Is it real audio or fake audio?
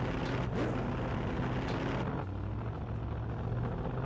real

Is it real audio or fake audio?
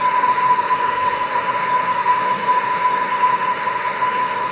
fake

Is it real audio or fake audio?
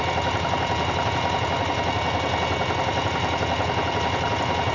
real